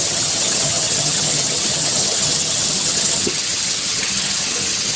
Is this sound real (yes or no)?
no